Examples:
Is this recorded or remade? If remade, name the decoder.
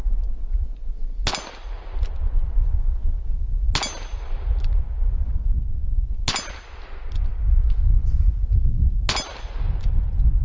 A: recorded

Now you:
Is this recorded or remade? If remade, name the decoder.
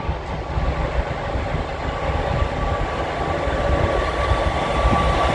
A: recorded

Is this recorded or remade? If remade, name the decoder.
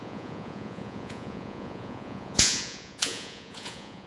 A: remade, vocoder, Vocos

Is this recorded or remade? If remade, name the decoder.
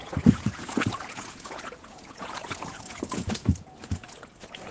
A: remade, vocoder, Vocos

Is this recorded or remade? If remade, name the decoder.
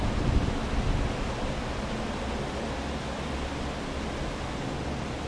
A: recorded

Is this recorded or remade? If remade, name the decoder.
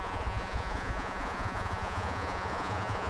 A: remade, vocoder, Vocos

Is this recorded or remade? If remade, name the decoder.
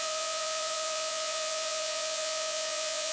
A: remade, vocoder, Vocos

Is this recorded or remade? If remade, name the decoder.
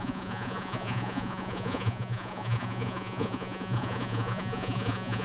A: remade, vocoder, Vocos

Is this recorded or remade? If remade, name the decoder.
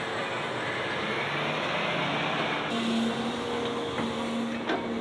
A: recorded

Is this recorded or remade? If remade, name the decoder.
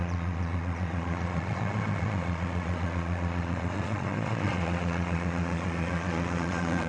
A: remade, vocoder, Vocos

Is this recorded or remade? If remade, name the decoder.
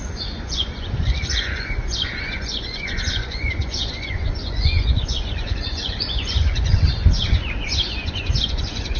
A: remade, vocoder, Vocos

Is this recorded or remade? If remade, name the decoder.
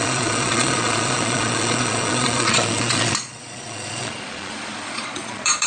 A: remade, vocoder, Vocos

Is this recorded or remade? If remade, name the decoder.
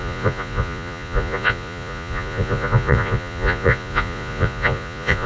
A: remade, vocoder, Vocos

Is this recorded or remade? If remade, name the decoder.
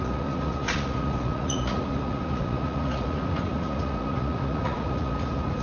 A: remade, vocoder, Vocos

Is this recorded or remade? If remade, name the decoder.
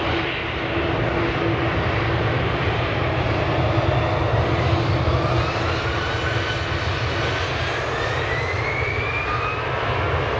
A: recorded